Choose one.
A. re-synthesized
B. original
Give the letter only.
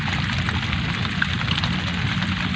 B